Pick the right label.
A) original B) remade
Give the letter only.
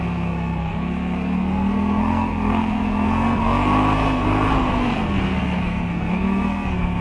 B